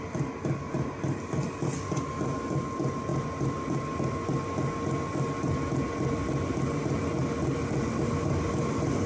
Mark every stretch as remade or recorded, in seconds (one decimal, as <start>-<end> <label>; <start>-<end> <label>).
0.0-9.1 recorded